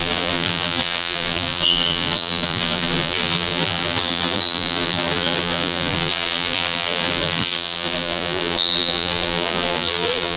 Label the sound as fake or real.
fake